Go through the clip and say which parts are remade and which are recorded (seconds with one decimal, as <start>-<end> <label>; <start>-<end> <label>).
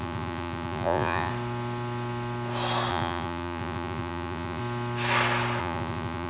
0.0-1.3 remade; 1.3-2.9 recorded; 2.9-4.6 remade; 4.6-5.6 recorded; 5.6-6.3 remade